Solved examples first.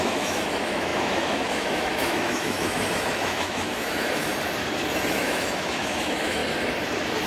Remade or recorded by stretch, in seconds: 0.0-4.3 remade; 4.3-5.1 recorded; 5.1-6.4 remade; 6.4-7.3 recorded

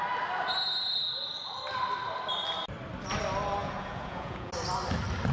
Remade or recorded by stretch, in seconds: 0.0-3.6 recorded; 3.6-4.5 remade; 4.5-5.3 recorded

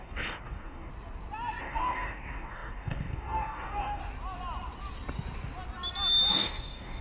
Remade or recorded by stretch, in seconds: 0.0-0.9 remade; 0.9-1.6 recorded; 1.6-4.0 remade; 4.0-6.3 recorded; 6.3-7.0 remade